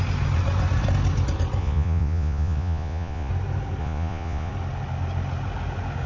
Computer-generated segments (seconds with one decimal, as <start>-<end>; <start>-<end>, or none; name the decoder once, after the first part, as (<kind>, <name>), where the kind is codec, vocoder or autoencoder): 1.6-3.3 (vocoder, Vocos); 3.8-4.5